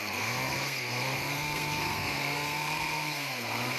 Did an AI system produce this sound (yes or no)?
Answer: yes